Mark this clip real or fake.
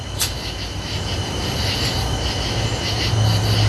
real